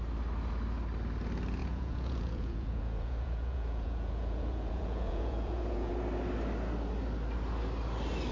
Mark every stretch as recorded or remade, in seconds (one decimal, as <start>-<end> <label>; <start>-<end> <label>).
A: 0.0-1.6 recorded; 1.6-5.9 remade; 5.9-8.3 recorded